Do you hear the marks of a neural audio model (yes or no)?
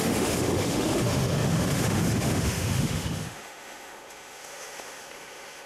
yes